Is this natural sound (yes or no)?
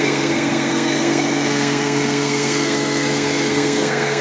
no